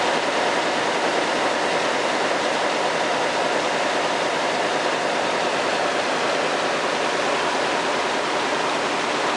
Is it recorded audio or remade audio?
recorded